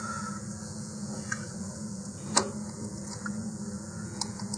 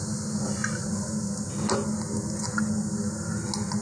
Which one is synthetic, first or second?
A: first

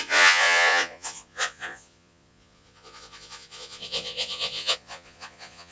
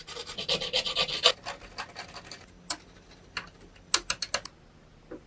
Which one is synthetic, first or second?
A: first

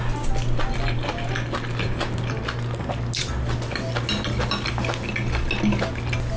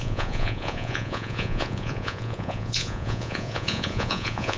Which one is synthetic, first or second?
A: second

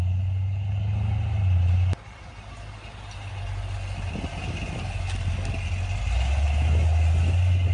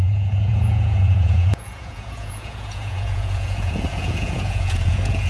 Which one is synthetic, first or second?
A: second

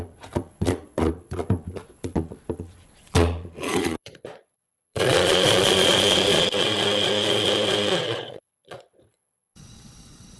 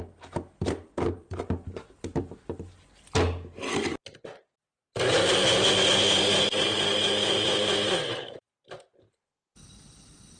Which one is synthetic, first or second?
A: first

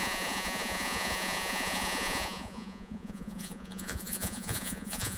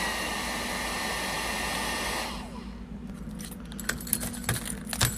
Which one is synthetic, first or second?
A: first